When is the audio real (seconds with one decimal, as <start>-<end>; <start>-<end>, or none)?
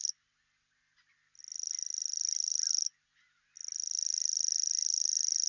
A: 0.0-5.5